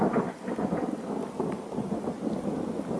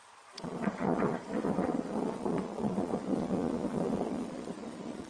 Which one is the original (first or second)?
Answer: first